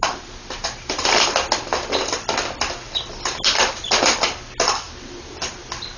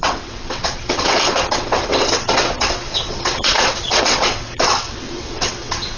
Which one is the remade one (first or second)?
second